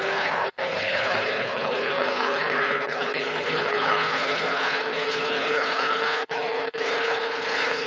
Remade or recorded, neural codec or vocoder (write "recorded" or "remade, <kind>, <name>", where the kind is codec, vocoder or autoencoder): remade, codec, HILCodec